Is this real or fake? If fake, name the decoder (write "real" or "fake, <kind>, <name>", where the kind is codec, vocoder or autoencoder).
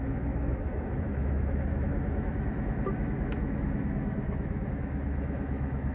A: fake, autoencoder, DAC-VAE